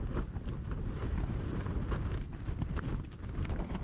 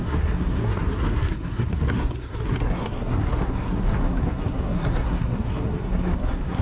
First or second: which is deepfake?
second